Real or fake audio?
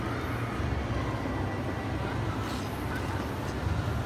real